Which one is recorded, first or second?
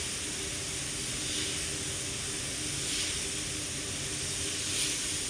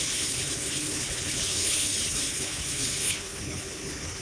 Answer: first